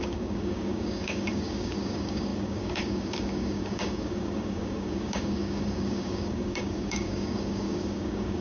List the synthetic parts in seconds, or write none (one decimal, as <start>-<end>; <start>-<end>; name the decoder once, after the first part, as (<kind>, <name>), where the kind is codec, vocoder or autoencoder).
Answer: 0.0-8.4 (codec, DAC)